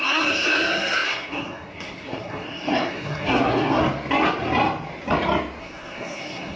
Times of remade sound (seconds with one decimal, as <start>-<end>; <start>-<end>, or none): 0.0-3.8; 5.6-6.6